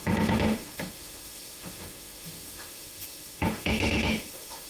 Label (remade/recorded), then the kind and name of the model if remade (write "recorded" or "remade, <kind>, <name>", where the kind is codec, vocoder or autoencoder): remade, autoencoder, DAC-VAE